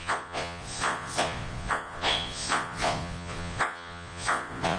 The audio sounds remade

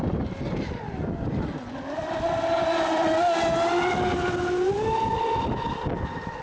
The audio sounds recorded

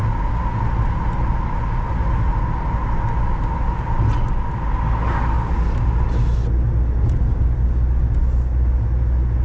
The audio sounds recorded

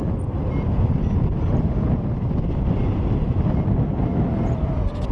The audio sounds recorded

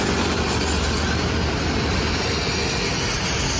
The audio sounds recorded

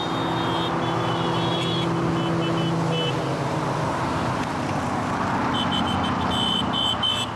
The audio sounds recorded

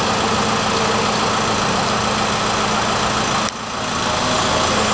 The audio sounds recorded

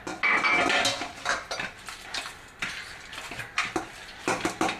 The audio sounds recorded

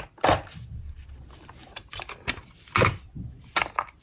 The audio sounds recorded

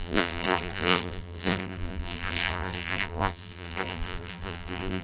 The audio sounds remade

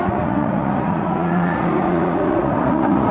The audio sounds remade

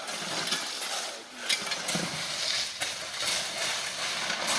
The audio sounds recorded